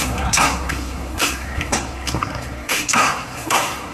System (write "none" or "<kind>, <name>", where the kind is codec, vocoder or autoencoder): codec, SNAC